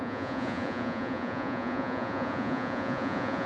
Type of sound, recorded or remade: remade